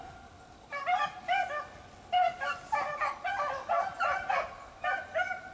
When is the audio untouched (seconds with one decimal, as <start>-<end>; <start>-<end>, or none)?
0.0-3.7; 4.3-5.5